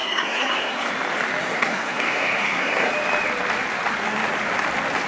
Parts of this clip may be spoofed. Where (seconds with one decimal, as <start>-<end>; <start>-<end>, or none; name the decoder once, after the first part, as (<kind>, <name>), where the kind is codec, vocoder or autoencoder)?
0.0-0.9 (codec, SNAC); 1.4-2.9